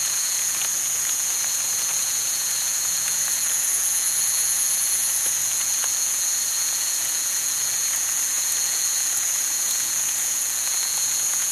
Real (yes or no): no